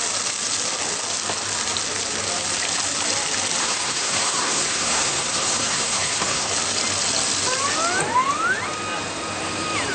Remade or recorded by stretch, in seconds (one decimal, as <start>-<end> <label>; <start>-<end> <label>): 0.0-3.6 recorded; 3.6-6.5 remade; 6.5-9.9 recorded